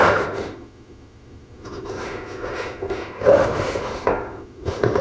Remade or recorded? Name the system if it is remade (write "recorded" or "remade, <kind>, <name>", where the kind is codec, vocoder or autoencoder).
remade, autoencoder, DAC-VAE